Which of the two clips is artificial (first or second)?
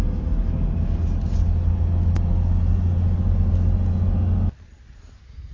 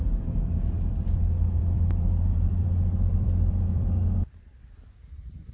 second